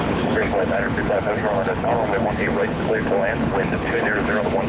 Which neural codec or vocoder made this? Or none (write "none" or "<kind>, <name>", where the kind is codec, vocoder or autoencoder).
codec, HILCodec